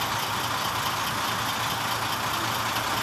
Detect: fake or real real